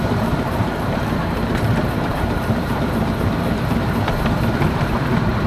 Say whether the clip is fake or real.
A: fake